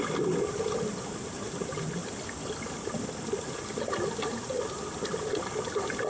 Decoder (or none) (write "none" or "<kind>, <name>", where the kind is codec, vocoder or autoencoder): none